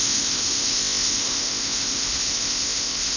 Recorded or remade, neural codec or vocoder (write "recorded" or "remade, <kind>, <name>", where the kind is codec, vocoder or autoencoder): remade, codec, ZipCodec